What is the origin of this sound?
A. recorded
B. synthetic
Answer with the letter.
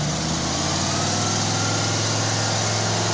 A